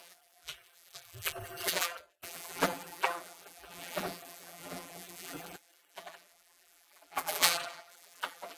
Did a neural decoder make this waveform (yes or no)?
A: yes